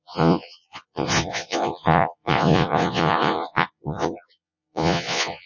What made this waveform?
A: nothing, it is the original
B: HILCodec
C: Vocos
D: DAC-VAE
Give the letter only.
C